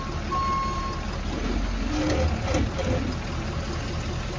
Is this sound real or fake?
real